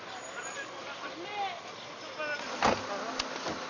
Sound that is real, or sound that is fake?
real